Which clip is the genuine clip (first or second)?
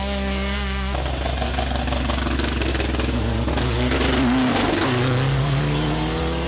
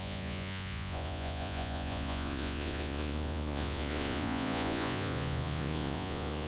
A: first